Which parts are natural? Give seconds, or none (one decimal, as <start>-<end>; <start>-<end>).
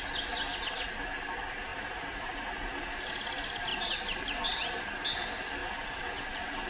0.0-1.7; 3.1-3.7; 4.8-5.6